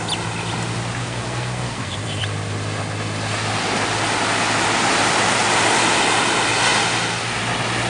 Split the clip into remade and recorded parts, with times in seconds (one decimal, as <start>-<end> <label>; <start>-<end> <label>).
0.0-1.0 recorded; 1.0-2.2 remade; 2.2-7.9 recorded